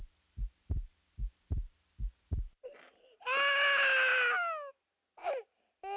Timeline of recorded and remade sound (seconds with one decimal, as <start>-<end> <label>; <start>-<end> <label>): 0.0-6.0 recorded